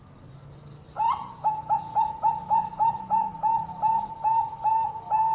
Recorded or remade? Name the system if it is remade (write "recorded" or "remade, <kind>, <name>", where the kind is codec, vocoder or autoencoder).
recorded